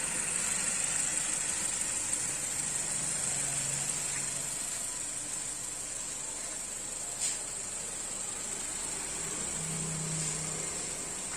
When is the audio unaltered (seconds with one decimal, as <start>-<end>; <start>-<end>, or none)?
0.0-11.4